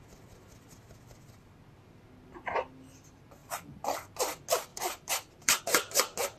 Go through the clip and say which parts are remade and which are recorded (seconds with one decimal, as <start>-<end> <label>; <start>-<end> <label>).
0.0-3.4 recorded; 3.4-4.1 remade; 4.1-4.7 recorded; 4.7-5.6 remade; 5.6-6.4 recorded